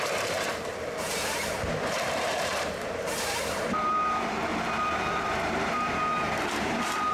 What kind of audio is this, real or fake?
fake